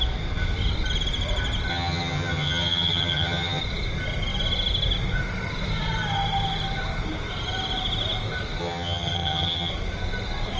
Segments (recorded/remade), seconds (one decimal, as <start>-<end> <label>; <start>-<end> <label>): 0.0-1.7 recorded; 1.7-3.6 remade; 3.6-8.6 recorded; 8.6-9.7 remade; 9.7-10.6 recorded